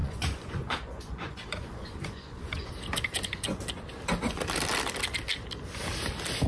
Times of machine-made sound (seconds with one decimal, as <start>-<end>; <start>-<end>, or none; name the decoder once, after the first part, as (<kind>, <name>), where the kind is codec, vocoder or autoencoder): 0.0-2.7 (vocoder, Vocos)